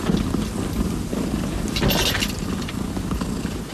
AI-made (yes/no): no